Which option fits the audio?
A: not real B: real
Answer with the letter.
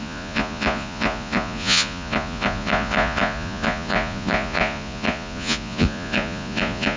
A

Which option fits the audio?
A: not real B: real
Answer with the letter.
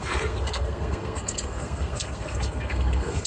A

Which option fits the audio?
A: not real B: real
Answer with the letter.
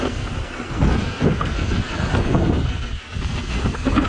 A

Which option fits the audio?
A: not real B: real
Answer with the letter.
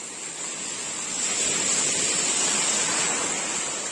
B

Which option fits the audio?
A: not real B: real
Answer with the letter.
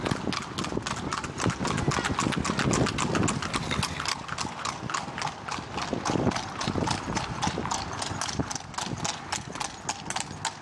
B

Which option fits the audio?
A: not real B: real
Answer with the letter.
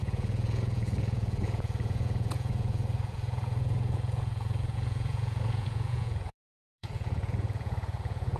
A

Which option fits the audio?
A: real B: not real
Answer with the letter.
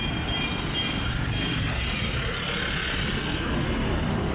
A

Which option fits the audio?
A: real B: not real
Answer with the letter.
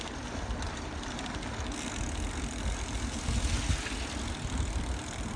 A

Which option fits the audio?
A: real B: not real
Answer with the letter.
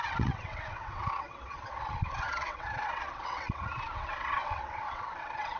B